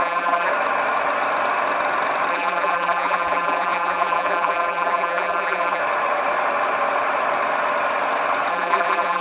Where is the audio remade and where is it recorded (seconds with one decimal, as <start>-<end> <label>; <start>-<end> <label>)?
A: 0.0-0.5 remade; 0.5-2.3 recorded; 2.3-5.8 remade; 5.8-8.5 recorded; 8.5-9.2 remade